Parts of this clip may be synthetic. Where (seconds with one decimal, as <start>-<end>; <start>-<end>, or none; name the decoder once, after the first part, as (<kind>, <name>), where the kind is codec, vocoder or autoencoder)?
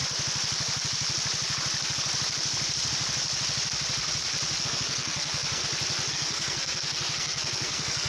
4.6-5.6 (codec, SNAC); 6.1-8.1